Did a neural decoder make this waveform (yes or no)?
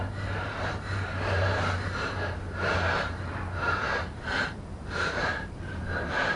yes